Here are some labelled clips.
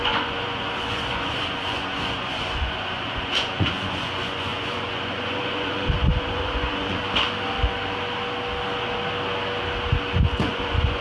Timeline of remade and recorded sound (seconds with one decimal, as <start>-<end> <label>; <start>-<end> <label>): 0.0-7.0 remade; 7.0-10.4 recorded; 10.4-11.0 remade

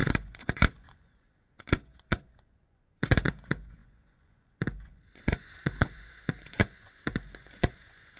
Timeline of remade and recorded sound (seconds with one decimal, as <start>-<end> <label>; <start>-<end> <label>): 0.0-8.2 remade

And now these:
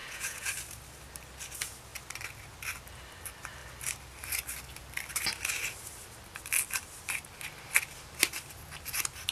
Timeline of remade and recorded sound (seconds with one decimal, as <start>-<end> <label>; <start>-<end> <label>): 0.0-0.5 remade; 0.5-9.3 recorded

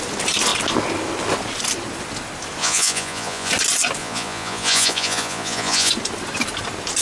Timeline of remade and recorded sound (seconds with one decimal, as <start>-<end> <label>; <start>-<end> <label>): 0.0-2.6 recorded; 2.6-3.5 remade; 3.5-4.0 recorded; 4.0-5.9 remade; 5.9-7.0 recorded